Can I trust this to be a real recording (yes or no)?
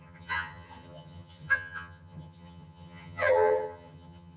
no